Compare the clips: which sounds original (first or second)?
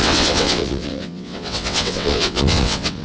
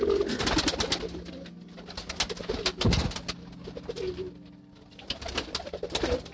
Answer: second